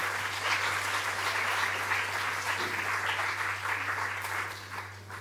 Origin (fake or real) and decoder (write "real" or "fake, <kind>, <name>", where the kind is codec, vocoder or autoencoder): real